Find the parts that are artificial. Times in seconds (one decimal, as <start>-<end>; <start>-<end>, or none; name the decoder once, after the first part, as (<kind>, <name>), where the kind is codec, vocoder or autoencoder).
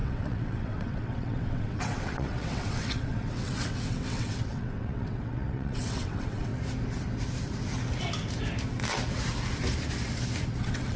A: 0.0-6.5 (vocoder, WaveNeXt); 10.6-11.0